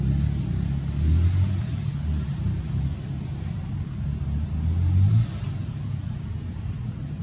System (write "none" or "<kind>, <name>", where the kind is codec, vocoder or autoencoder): none